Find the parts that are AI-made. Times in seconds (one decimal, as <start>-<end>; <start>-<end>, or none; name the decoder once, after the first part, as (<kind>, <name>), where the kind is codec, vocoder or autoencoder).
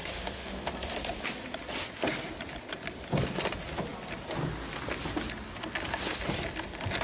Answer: 0.0-0.7 (autoencoder, DAC-VAE)